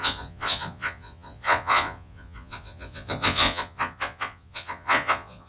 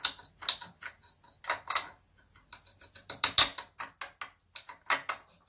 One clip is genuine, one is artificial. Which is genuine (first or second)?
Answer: second